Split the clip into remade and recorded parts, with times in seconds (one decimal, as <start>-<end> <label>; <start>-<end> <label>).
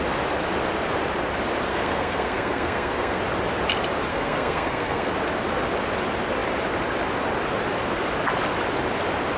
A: 0.0-1.7 recorded; 1.7-3.2 remade; 3.2-4.1 recorded; 4.1-5.1 remade; 5.1-9.4 recorded